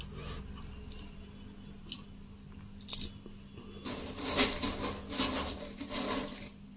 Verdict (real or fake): real